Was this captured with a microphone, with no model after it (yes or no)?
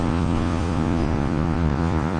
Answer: no